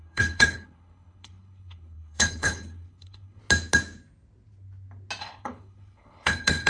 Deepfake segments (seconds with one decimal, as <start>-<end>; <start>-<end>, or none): 0.0-3.4; 5.2-6.7